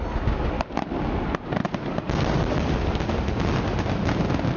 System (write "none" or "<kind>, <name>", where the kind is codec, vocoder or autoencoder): none